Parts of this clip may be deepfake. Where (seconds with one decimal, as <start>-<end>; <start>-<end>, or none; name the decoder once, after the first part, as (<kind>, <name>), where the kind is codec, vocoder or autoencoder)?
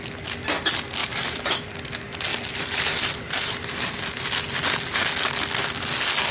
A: 1.0-1.7 (vocoder, BigVGAN v2); 2.3-4.3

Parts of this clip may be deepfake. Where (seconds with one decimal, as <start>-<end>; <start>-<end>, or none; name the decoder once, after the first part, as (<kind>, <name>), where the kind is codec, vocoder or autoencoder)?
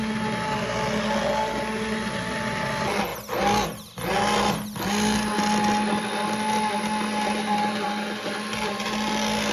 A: none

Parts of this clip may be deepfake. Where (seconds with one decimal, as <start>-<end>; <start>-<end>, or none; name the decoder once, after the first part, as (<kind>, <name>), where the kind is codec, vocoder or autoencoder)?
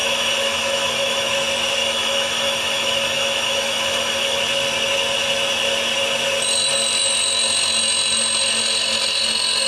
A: 0.0-1.3 (autoencoder, DAC-VAE); 1.8-4.4